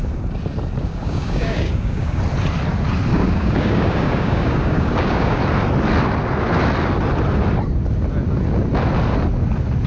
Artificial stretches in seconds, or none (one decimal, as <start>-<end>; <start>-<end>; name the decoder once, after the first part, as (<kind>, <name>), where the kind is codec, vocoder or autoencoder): 0.9-2.2 (codec, DAC); 3.1-5.4

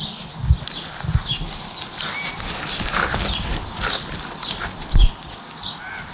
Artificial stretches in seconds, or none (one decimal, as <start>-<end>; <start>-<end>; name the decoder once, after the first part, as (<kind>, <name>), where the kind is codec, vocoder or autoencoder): none

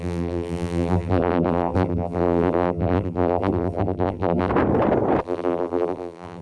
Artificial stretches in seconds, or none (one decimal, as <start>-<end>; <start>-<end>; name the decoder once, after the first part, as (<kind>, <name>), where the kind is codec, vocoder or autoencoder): 0.0-4.5 (vocoder, BigVGAN v2); 5.2-6.4

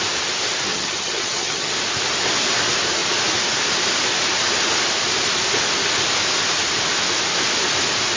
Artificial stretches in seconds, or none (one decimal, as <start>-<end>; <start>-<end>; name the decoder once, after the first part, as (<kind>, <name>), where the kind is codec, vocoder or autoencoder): 0.7-1.7 (vocoder, HiFi-GAN)

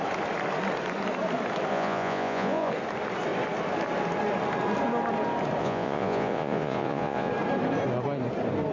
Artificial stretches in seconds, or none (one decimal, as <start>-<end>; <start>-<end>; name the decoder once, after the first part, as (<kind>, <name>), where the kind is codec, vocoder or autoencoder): 1.7-2.7 (vocoder, Vocos); 5.6-7.3

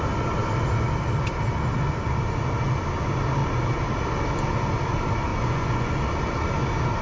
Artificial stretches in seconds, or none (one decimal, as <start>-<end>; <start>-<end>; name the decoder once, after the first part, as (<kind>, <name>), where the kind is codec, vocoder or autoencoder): 5.3-5.9 (vocoder, Vocos)

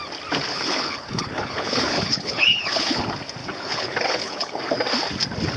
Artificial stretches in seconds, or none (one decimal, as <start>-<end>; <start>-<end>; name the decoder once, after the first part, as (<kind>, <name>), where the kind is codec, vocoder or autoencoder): 0.5-3.0 (codec, HILCodec); 3.4-4.6

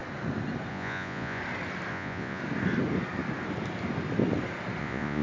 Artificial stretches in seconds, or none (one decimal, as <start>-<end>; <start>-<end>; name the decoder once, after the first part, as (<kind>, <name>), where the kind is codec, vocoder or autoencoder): 0.7-1.4 (vocoder, Vocos); 1.9-2.4; 4.8-5.2